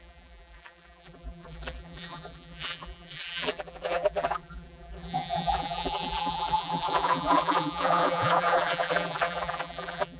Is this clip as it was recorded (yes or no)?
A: no